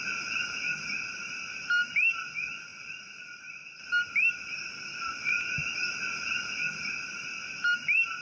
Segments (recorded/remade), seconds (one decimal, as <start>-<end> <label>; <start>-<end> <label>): 0.0-8.2 recorded